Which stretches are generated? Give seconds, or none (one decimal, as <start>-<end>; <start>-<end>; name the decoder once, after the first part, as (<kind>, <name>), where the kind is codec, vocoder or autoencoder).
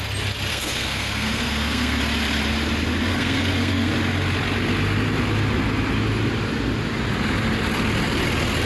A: 0.5-2.0 (codec, SNAC); 3.1-3.9